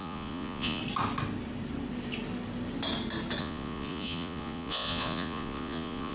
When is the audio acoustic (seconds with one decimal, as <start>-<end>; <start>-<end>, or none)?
0.8-3.4